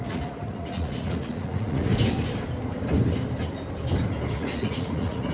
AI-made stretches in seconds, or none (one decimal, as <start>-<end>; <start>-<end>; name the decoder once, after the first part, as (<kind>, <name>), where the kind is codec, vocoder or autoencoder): 0.0-1.9 (vocoder, Vocos); 4.3-5.3